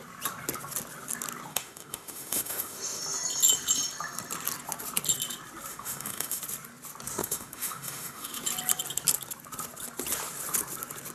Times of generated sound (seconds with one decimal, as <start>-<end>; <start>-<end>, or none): 1.5-3.0; 5.7-6.4; 7.2-8.4